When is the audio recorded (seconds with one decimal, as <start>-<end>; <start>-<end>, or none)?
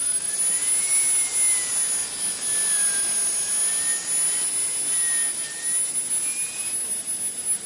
0.0-7.7